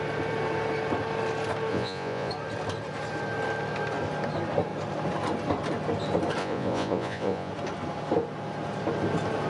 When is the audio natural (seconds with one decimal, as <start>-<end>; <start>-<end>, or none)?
0.0-1.7; 2.3-6.4; 7.5-9.5